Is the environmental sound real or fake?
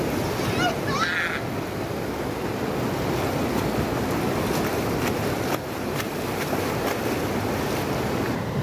real